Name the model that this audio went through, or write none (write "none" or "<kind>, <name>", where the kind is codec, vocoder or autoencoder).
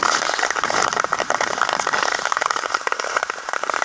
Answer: vocoder, BigVGAN v2